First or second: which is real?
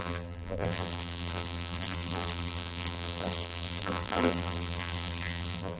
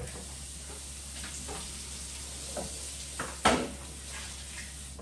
second